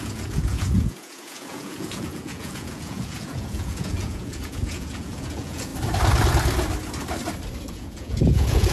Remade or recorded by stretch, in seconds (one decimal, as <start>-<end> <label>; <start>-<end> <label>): 0.0-5.7 remade; 5.7-7.7 recorded; 7.7-8.7 remade